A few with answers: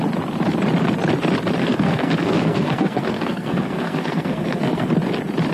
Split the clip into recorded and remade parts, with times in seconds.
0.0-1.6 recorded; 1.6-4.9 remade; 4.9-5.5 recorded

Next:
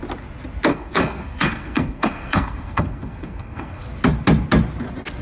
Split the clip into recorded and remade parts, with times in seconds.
0.0-0.7 recorded; 0.7-3.8 remade; 3.8-5.2 recorded

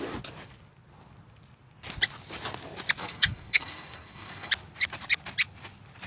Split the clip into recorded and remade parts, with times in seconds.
0.0-3.0 recorded; 3.0-4.5 remade; 4.5-6.1 recorded

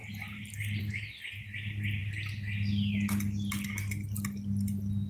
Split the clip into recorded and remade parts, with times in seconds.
0.0-5.1 recorded

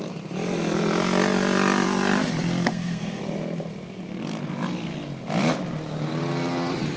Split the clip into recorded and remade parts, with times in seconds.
0.0-2.7 recorded; 2.7-3.2 remade; 3.2-7.0 recorded

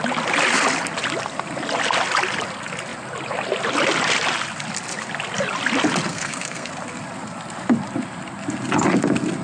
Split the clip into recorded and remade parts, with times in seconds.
0.0-6.1 recorded; 6.1-6.7 remade; 6.7-9.4 recorded

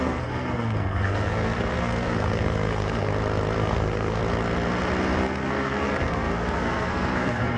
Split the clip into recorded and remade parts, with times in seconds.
0.0-3.1 remade; 3.1-3.6 recorded; 3.6-4.2 remade; 4.2-5.2 recorded; 5.2-7.6 remade

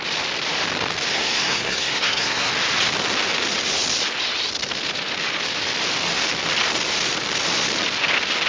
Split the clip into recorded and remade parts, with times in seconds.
0.0-1.1 recorded; 1.1-2.5 remade; 2.5-8.5 recorded